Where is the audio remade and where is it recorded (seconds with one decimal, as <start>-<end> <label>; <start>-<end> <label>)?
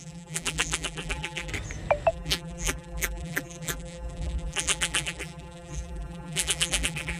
0.0-1.5 remade; 1.5-2.1 recorded; 2.1-7.2 remade